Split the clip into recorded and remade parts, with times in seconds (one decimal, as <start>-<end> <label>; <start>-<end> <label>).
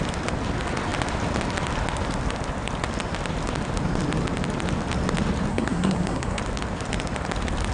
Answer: 0.0-5.5 recorded; 5.5-6.4 remade; 6.4-7.7 recorded